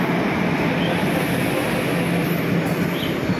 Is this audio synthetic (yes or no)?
no